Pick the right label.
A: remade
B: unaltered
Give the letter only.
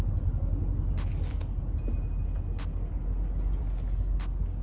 B